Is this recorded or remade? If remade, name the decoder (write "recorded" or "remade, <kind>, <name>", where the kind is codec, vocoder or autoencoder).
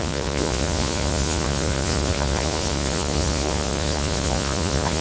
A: remade, vocoder, Vocos